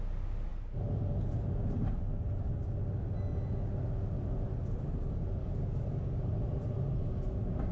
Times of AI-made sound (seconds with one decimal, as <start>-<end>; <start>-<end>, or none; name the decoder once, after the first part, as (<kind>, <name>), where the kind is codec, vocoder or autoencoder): 5.4-6.3 (codec, DAC)